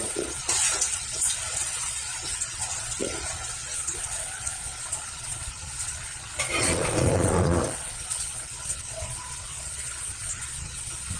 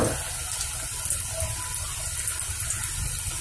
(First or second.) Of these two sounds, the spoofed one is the first